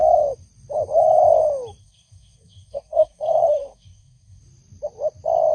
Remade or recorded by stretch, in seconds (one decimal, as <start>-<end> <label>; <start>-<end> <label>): 0.0-1.8 recorded; 1.8-4.4 remade; 4.4-5.5 recorded